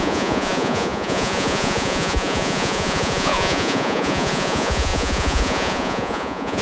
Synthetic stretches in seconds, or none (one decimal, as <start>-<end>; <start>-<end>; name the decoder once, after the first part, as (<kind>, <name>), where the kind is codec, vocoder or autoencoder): 0.0-6.6 (vocoder, Vocos)